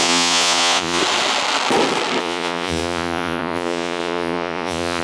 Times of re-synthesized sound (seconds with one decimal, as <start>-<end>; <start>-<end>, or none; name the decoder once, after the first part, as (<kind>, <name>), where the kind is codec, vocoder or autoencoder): 0.0-1.0 (vocoder, Vocos); 2.2-5.0